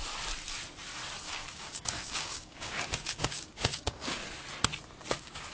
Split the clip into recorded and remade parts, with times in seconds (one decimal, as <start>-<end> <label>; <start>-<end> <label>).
0.0-1.2 recorded; 1.2-4.2 remade; 4.2-5.1 recorded; 5.1-5.5 remade